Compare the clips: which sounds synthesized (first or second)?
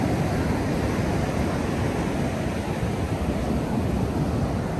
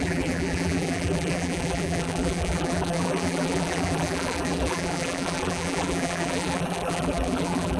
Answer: second